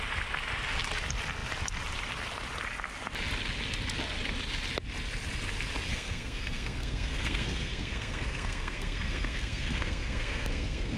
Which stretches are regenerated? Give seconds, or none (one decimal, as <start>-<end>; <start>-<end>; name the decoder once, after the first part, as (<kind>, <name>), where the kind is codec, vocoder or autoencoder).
5.9-11.0 (codec, SNAC)